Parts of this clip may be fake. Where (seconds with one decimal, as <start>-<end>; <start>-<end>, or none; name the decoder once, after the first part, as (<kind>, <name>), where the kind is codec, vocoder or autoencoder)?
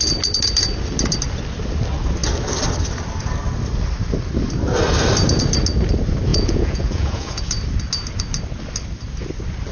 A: 6.3-7.4 (vocoder, Vocos)